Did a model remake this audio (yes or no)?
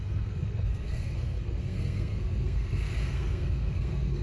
yes